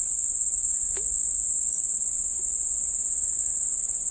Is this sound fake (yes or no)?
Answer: no